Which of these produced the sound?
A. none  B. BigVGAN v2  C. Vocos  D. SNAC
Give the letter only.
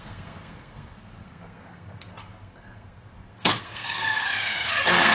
D